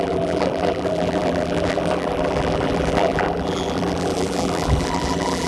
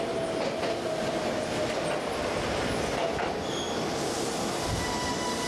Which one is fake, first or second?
first